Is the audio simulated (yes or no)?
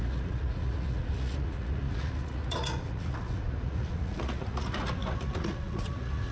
yes